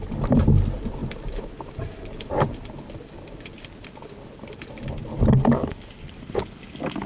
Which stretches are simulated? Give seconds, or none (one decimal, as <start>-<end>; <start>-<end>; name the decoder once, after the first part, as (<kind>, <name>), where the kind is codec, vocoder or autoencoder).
1.0-2.7 (vocoder, BigVGAN v2)